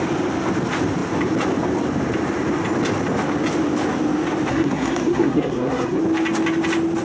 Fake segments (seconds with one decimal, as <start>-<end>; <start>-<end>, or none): 4.5-6.0